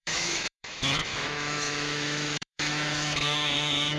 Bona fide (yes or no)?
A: no